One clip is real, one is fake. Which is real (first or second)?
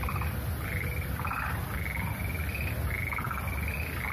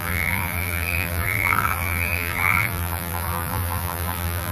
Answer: first